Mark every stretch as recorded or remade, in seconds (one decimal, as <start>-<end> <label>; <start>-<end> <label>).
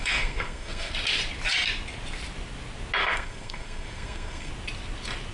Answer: 0.0-0.9 remade; 0.9-3.0 recorded; 3.0-4.5 remade; 4.5-5.3 recorded